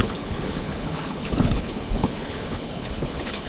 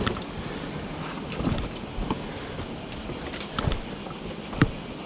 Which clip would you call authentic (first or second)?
second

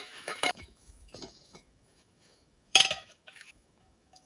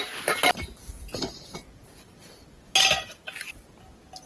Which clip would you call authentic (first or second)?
second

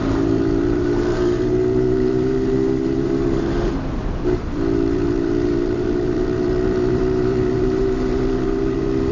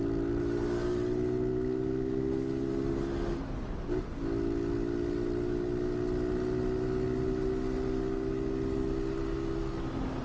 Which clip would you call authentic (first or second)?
second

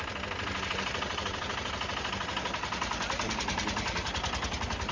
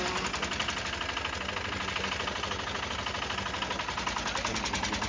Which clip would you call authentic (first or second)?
second